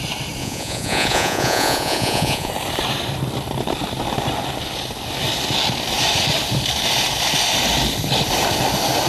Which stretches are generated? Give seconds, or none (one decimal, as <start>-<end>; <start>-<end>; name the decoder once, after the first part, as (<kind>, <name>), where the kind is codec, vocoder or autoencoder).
0.4-2.5 (vocoder, Vocos)